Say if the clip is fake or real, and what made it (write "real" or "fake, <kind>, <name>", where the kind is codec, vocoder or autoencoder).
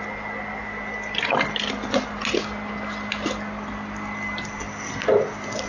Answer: real